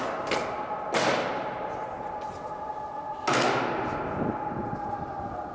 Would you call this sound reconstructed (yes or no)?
no